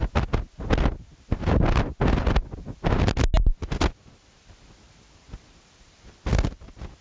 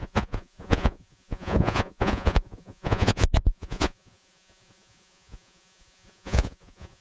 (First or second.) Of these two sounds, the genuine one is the first